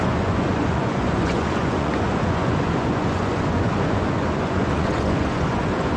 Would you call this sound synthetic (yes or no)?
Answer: yes